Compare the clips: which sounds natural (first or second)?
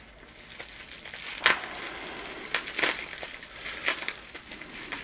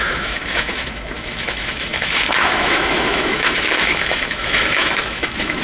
first